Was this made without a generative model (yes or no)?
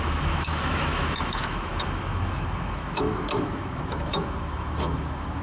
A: no